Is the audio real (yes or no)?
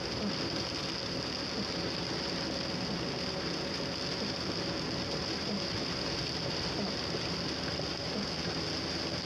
yes